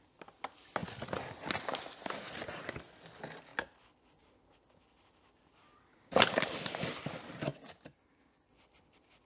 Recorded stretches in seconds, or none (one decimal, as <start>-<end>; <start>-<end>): 0.0-9.2